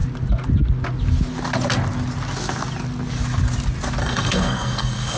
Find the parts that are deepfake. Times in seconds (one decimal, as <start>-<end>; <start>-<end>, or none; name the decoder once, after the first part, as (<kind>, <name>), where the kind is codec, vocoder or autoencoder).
4.0-5.2 (codec, SNAC)